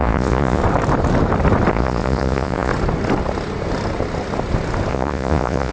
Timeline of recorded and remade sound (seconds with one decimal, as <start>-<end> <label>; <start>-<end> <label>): 0.0-0.6 remade; 0.6-1.7 recorded; 1.7-2.7 remade; 2.7-4.9 recorded; 4.9-5.7 remade